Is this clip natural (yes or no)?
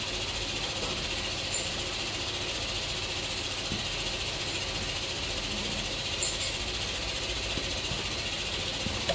yes